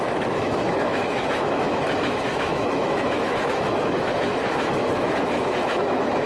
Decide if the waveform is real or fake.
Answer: fake